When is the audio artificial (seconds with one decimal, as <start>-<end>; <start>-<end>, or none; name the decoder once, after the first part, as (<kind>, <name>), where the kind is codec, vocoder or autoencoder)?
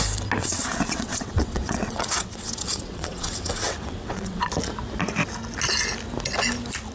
0.4-4.5 (vocoder, WaveNeXt)